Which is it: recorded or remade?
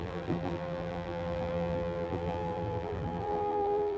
remade